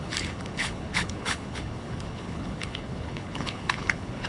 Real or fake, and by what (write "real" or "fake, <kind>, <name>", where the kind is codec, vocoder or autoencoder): fake, codec, HILCodec